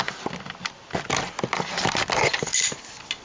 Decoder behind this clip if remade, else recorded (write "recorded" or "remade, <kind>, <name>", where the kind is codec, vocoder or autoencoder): recorded